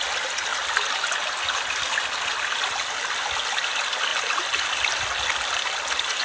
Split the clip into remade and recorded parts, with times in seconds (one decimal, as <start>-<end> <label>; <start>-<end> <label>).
0.0-6.2 recorded